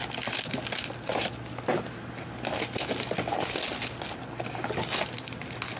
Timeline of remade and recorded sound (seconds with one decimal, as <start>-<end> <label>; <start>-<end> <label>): 0.0-5.8 recorded